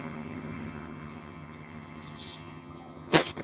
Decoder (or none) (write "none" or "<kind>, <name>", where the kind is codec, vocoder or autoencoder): vocoder, HiFi-GAN